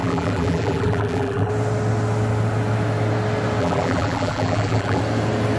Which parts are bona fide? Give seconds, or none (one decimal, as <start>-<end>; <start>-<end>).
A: 1.5-3.6; 5.0-5.6